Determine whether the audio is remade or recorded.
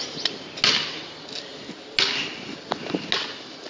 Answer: recorded